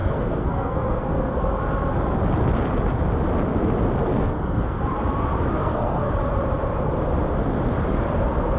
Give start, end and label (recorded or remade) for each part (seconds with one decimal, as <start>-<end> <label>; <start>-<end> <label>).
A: 0.0-1.6 remade; 1.6-4.0 recorded; 4.0-4.8 remade; 4.8-5.6 recorded; 5.6-6.1 remade; 6.1-8.6 recorded

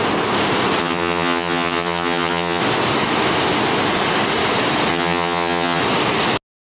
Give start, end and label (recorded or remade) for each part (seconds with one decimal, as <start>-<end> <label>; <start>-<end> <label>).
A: 0.0-0.8 recorded; 0.8-2.6 remade; 2.6-4.9 recorded; 4.9-5.8 remade; 5.8-6.7 recorded

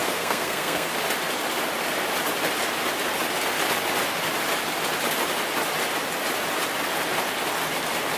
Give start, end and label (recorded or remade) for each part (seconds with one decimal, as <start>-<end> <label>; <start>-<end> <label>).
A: 0.0-0.9 remade; 0.9-8.2 recorded